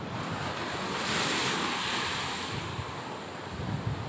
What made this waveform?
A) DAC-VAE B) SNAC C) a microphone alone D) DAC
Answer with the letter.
C